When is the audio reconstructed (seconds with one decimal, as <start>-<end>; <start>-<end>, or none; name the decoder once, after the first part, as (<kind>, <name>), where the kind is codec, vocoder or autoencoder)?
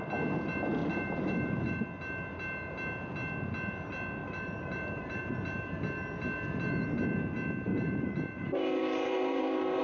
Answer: 0.8-1.8 (vocoder, BigVGAN v2); 4.2-5.2; 7.7-9.8